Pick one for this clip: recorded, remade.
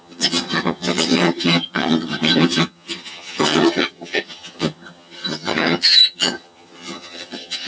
remade